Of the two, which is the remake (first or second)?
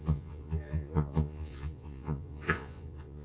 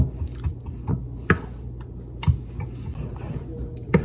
first